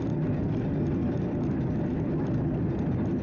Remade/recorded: recorded